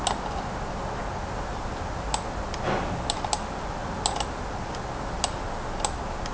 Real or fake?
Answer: real